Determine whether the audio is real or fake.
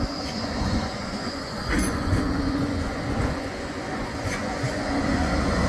fake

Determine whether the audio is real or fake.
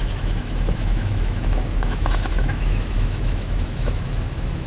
fake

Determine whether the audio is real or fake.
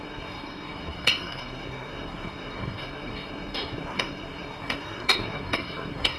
fake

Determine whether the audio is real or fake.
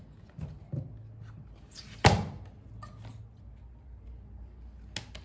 real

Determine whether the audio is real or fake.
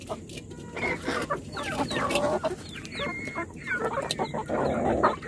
real